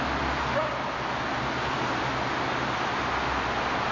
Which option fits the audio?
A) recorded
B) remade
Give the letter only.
A